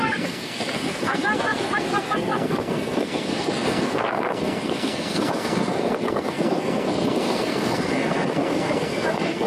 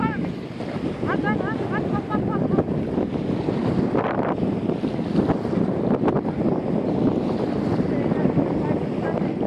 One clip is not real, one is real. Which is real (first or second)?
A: second